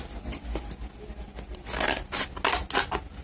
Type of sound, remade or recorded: recorded